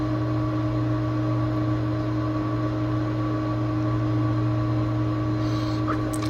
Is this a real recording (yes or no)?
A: yes